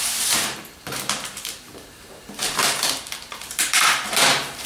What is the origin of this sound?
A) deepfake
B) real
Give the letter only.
A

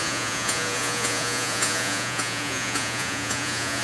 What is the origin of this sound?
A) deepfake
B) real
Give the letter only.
A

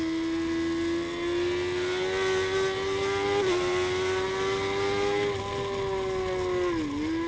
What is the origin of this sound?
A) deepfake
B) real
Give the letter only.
B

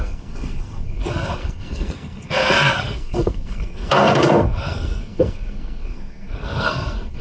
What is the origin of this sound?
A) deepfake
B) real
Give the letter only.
A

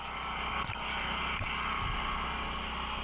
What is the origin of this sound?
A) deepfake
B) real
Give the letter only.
B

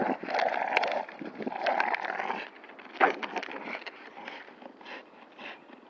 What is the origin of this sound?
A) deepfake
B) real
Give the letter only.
B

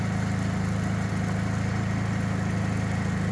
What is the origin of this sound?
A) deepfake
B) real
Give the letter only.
B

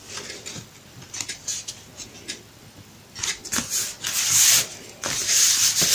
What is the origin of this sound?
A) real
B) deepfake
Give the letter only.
A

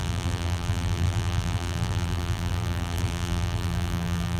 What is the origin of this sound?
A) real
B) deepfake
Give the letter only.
B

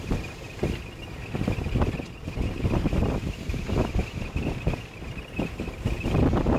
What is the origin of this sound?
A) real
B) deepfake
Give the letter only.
A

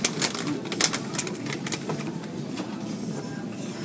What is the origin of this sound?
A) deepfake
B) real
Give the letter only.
B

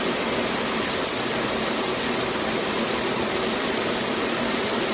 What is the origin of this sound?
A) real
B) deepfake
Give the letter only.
B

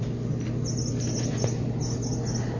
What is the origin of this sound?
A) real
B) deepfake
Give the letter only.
A